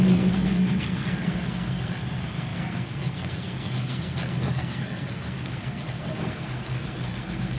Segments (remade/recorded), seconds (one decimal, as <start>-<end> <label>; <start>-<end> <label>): 0.0-7.6 remade